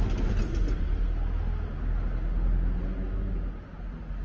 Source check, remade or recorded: recorded